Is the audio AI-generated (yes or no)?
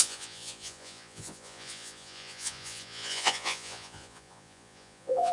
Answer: yes